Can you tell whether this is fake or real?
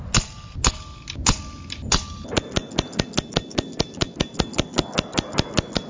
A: real